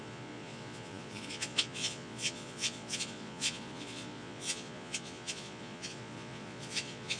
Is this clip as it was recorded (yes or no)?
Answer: no